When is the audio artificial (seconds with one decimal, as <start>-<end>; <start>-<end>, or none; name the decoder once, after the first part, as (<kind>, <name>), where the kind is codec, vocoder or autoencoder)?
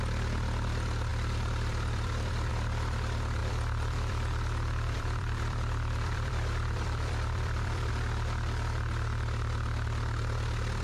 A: 1.1-2.5 (vocoder, BigVGAN v2); 3.4-7.9